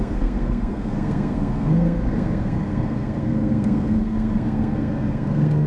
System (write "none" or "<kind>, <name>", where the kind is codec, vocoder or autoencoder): codec, SNAC